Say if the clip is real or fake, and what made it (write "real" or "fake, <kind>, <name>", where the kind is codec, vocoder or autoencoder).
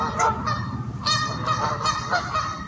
fake, vocoder, BigVGAN v2